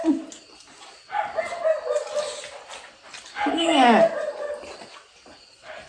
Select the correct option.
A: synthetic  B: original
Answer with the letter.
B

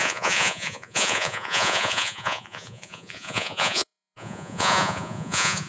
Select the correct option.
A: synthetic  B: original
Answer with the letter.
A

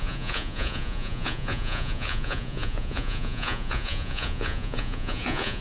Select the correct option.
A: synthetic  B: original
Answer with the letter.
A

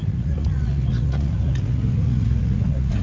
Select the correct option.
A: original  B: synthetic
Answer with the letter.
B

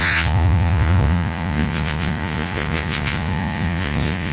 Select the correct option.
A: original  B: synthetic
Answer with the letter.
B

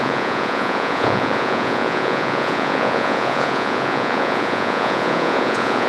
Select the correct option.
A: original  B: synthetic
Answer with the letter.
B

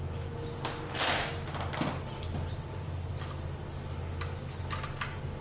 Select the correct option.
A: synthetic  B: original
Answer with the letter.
B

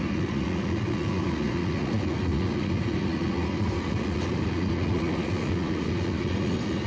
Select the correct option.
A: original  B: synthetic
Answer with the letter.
B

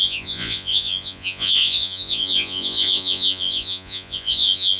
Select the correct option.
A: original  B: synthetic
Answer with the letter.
B